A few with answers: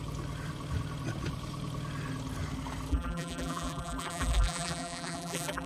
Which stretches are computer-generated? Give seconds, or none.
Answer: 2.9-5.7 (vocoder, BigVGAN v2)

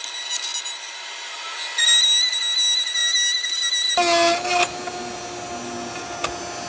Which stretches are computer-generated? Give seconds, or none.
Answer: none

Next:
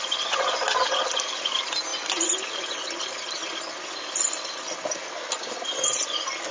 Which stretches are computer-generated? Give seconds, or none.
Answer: none

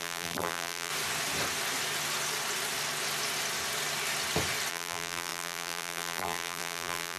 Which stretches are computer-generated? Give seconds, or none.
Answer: 0.0-0.9 (vocoder, BigVGAN v2); 4.7-7.2